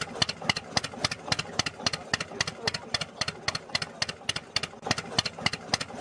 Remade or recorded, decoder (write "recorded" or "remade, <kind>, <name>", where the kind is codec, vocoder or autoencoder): recorded